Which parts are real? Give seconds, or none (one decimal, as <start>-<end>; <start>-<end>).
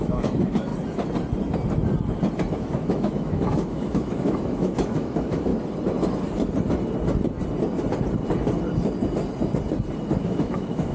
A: 0.7-2.5; 5.5-10.2